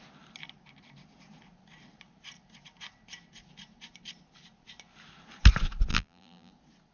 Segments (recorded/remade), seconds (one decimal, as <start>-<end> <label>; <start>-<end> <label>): 0.0-5.9 recorded; 5.9-6.5 remade; 6.5-6.9 recorded